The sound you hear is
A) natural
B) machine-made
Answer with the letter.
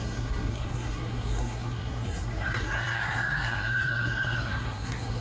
B